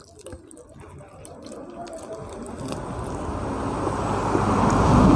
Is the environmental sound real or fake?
real